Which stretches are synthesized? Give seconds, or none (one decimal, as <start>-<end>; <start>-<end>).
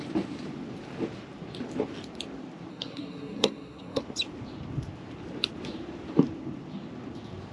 2.7-4.0